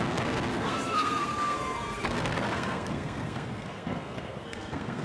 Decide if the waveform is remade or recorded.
remade